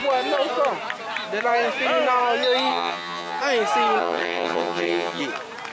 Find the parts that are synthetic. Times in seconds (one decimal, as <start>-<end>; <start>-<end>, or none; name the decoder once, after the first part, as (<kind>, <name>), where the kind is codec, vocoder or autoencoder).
2.7-3.4 (vocoder, HiFi-GAN); 4.0-5.2